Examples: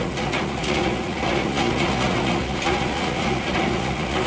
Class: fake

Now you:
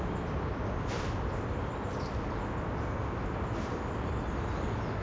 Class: real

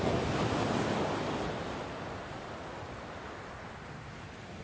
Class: real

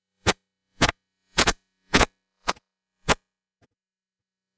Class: fake